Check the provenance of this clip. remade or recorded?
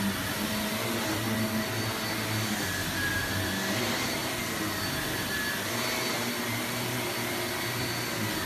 recorded